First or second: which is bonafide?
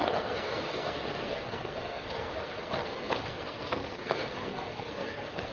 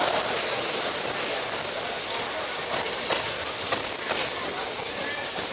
second